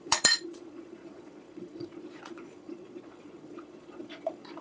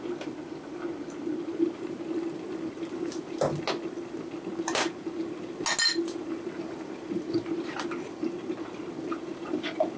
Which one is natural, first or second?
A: second